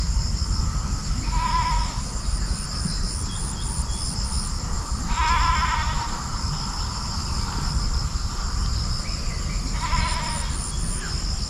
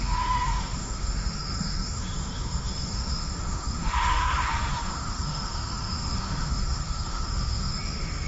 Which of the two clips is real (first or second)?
first